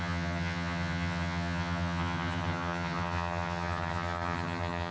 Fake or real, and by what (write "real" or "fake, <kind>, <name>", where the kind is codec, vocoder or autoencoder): fake, vocoder, HiFi-GAN